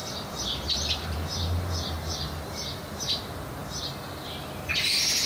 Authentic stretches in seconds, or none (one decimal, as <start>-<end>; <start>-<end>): 3.2-5.3